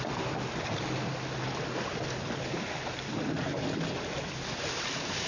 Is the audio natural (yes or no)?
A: yes